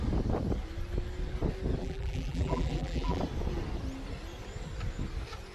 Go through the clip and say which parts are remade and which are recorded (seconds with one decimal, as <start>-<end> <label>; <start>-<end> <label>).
0.0-1.8 recorded; 1.8-3.2 remade; 3.2-5.5 recorded